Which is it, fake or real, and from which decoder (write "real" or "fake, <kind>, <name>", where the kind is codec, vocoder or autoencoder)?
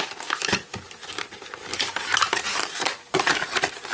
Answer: real